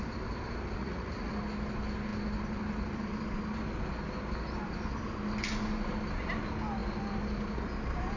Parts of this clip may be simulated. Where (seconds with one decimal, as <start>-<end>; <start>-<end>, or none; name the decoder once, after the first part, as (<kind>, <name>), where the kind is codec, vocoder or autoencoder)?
0.8-1.3 (vocoder, Vocos)